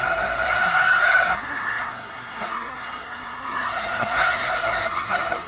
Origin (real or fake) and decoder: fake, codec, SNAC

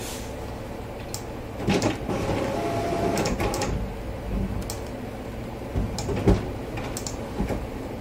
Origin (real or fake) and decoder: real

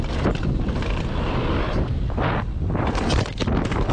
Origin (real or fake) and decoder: real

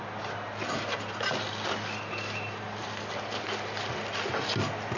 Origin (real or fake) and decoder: real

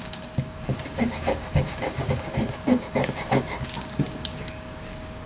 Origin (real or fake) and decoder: fake, codec, DAC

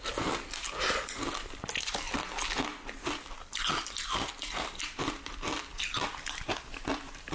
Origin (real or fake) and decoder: real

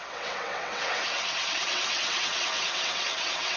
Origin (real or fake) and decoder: fake, vocoder, WaveNeXt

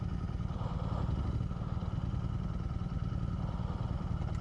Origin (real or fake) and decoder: real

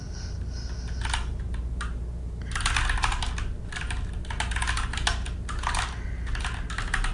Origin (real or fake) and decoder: real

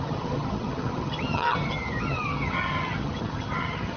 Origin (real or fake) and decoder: fake, vocoder, HiFi-GAN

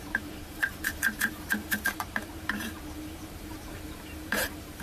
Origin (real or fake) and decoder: fake, vocoder, BigVGAN v2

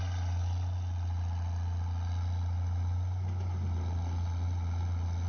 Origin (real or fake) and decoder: real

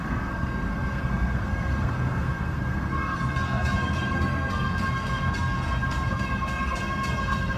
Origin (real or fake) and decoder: fake, codec, SNAC